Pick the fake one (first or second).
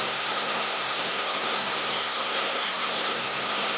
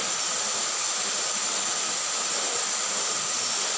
first